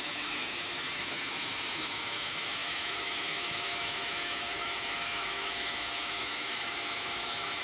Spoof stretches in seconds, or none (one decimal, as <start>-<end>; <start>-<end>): 0.0-7.6